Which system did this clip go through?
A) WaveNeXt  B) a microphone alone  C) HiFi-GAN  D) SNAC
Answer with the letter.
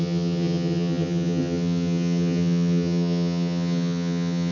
C